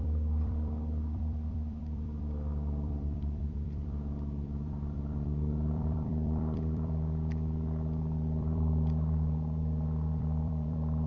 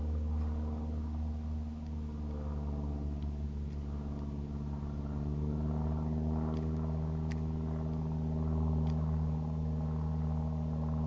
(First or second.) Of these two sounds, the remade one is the first